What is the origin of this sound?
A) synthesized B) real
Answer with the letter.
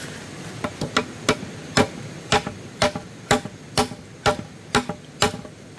B